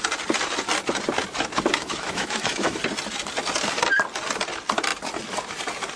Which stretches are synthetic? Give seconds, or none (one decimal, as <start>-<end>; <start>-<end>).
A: 1.7-2.8